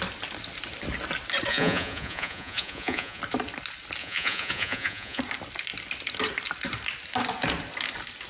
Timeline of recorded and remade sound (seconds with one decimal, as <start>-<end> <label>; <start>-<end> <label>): 0.0-1.5 recorded; 1.5-3.2 remade; 3.2-4.0 recorded; 4.0-5.2 remade; 5.2-8.3 recorded